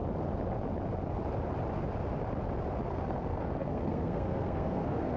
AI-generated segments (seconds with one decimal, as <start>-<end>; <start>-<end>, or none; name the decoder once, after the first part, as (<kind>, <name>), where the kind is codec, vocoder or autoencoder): 2.9-5.2 (codec, SNAC)